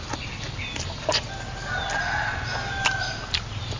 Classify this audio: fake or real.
real